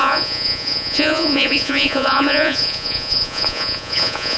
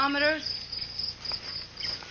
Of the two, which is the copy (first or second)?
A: first